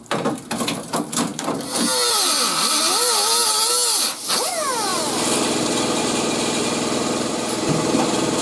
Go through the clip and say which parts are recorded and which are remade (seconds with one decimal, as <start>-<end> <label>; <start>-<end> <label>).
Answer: 0.0-8.4 recorded